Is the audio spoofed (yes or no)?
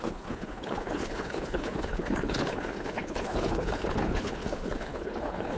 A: yes